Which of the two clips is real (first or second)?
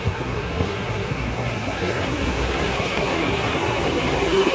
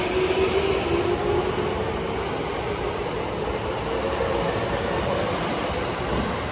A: second